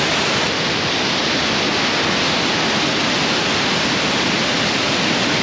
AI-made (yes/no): no